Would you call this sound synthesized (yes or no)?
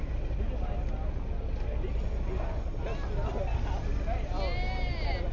no